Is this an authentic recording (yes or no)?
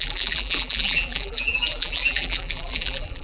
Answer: no